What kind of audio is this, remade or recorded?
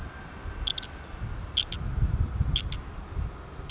recorded